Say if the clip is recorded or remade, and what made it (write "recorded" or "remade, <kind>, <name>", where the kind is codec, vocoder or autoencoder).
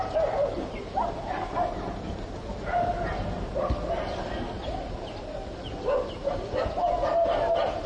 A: recorded